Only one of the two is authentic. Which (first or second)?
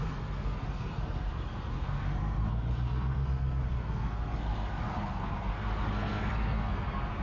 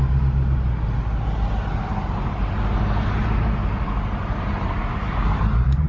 second